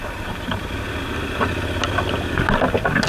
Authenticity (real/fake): real